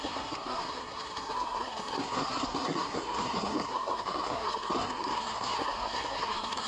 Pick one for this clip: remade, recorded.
remade